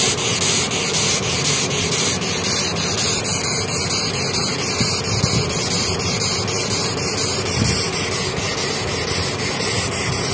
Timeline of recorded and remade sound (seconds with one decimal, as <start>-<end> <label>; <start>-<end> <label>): 0.0-10.3 recorded